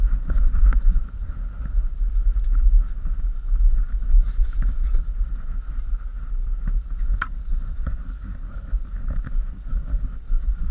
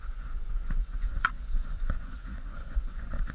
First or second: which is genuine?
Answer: first